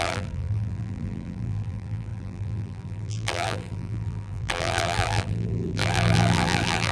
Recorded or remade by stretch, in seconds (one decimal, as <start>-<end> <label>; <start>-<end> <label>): 0.0-6.9 remade